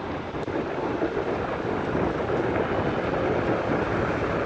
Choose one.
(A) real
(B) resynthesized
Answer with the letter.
A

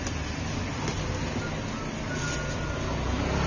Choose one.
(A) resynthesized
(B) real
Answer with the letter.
B